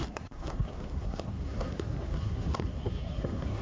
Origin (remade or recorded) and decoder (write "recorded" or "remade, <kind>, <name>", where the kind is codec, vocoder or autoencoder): remade, codec, SNAC